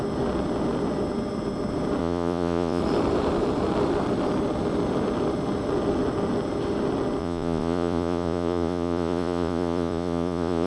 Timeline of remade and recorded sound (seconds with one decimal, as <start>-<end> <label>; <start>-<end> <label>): 0.0-2.0 recorded; 2.0-2.8 remade; 2.8-7.2 recorded; 7.2-10.7 remade